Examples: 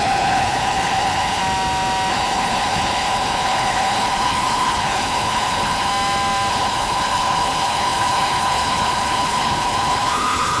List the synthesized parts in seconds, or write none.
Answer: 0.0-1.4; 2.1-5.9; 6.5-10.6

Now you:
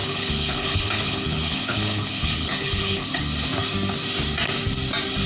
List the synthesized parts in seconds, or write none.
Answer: 0.0-3.2

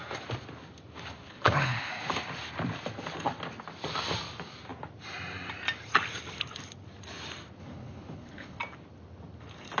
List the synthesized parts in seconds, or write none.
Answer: 1.2-1.9; 7.6-8.6

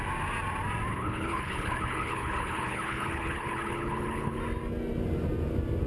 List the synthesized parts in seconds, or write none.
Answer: 0.9-4.4

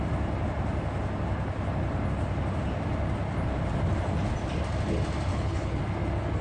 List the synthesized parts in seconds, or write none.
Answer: 5.3-5.8